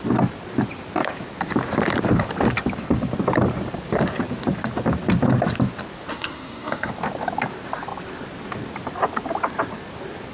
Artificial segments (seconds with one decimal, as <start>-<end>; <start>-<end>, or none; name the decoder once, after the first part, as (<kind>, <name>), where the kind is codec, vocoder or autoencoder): 6.1-6.9 (codec, SNAC)